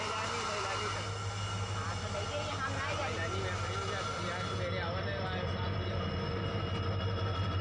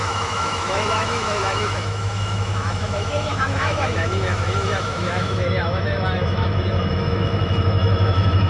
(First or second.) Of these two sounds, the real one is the first